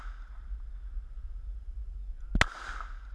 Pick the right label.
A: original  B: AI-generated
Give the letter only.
A